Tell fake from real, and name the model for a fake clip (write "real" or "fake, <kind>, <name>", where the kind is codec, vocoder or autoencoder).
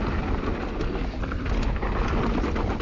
real